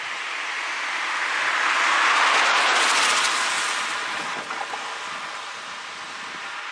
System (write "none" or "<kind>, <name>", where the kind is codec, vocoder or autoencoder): none